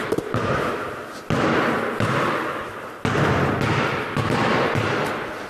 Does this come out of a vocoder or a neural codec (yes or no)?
no